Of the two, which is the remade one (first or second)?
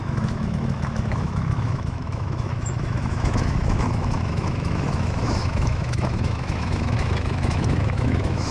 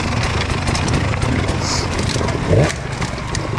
first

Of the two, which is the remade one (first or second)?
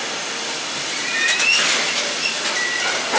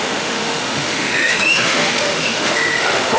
second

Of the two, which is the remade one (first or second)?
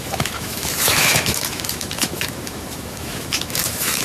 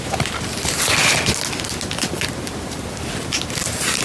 first